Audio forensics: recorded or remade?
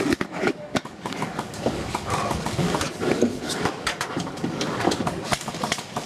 remade